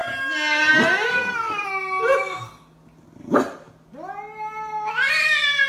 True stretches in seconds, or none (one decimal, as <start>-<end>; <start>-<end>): 0.0-1.1; 1.7-5.7